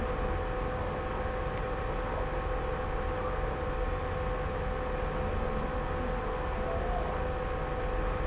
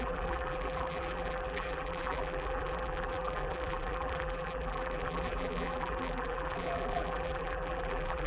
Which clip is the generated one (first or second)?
second